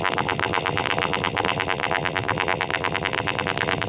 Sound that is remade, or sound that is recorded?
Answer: remade